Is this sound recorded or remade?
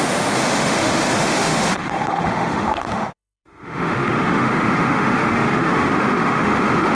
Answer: remade